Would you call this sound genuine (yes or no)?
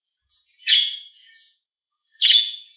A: no